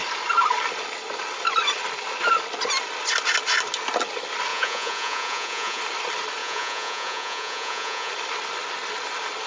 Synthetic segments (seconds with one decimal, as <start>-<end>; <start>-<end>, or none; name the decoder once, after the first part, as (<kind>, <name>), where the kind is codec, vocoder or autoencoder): 4.5-5.8 (vocoder, Vocos); 6.4-8.1